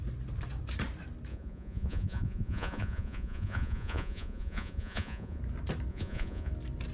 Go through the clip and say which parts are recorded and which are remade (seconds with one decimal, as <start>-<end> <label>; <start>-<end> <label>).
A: 0.0-1.3 recorded; 1.3-5.4 remade; 5.4-5.9 recorded; 5.9-6.5 remade; 6.5-6.9 recorded